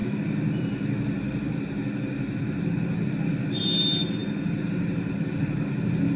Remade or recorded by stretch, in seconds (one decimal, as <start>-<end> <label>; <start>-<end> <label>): 0.0-6.2 recorded